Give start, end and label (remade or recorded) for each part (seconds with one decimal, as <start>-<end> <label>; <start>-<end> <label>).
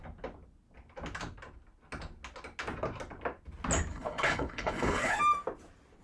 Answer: 0.0-3.9 recorded; 3.9-5.2 remade; 5.2-6.0 recorded